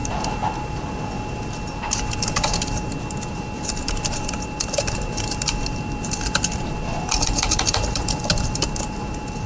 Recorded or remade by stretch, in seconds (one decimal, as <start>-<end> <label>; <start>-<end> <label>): 0.0-3.3 recorded; 3.3-9.5 remade